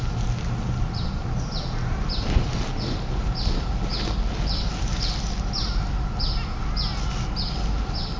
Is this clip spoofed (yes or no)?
no